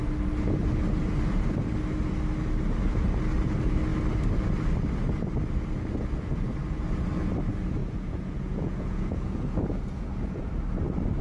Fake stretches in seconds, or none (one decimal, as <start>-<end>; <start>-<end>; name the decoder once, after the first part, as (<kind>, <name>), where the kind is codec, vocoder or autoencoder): 7.8-10.5 (vocoder, Vocos)